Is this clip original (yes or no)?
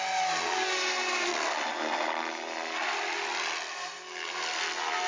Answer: yes